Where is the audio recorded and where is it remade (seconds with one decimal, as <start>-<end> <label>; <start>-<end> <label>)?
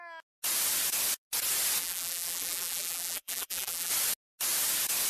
0.0-1.8 recorded; 1.8-3.9 remade; 3.9-5.1 recorded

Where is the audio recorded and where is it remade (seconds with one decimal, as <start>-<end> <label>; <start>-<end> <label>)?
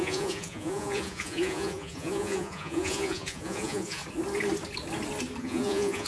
0.0-4.0 remade; 4.0-5.4 recorded; 5.4-6.1 remade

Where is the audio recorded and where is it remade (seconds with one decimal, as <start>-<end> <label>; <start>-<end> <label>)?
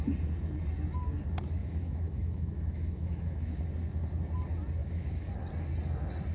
0.0-1.6 recorded; 1.6-3.6 remade; 3.6-4.8 recorded; 4.8-5.3 remade; 5.3-6.3 recorded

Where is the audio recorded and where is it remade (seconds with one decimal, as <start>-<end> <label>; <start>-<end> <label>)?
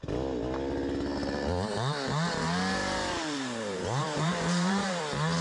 0.0-2.8 recorded; 2.8-5.0 remade; 5.0-5.4 recorded